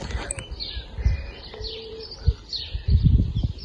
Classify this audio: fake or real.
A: real